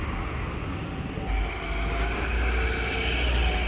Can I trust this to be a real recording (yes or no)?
yes